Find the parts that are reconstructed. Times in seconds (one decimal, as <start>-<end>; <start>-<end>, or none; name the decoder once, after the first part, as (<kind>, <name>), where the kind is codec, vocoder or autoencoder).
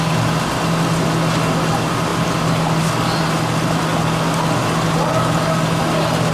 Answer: none